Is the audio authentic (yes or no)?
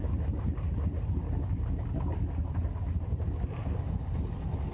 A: yes